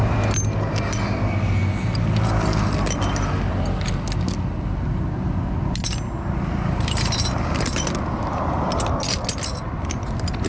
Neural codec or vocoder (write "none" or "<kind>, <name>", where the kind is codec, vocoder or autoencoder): none